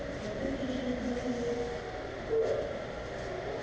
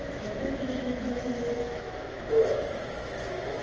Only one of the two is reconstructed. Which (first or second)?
second